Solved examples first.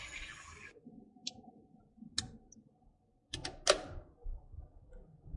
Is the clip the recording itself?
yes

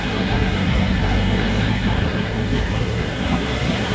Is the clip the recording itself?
no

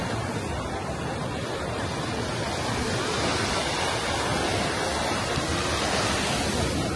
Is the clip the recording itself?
yes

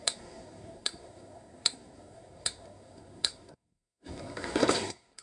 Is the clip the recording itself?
no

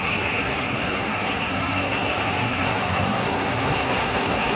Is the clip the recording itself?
no